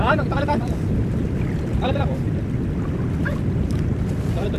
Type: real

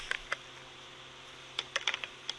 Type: real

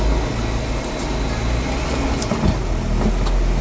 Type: real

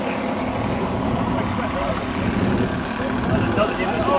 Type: real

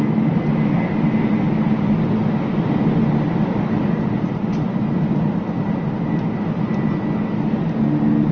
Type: real